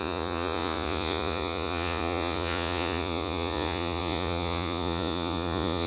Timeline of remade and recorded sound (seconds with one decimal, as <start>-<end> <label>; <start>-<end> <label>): 0.0-5.9 remade